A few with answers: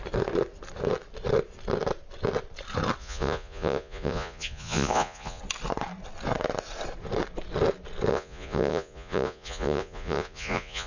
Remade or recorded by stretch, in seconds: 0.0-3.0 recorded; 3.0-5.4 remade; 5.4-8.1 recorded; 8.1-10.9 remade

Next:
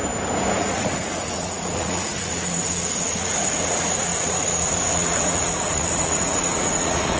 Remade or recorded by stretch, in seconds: 0.0-0.6 recorded; 0.6-7.2 remade

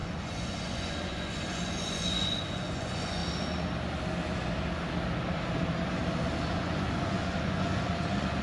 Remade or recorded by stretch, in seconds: 0.0-3.2 remade; 3.2-6.4 recorded; 6.4-8.4 remade

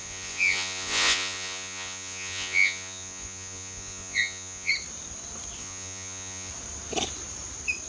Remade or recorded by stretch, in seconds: 0.0-4.7 remade; 4.7-5.6 recorded; 5.6-6.5 remade; 6.5-7.9 recorded

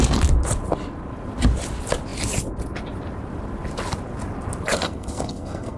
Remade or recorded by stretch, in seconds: 0.0-4.7 recorded; 4.7-5.8 remade

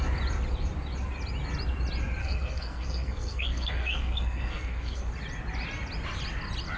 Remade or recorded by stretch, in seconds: 0.0-2.2 recorded; 2.2-5.1 remade; 5.1-6.8 recorded

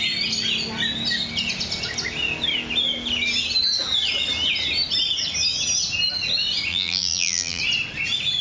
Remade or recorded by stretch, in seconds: 0.0-6.7 recorded; 6.7-7.6 remade; 7.6-8.4 recorded